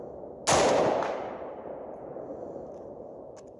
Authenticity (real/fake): real